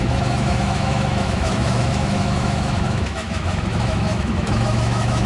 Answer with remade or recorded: remade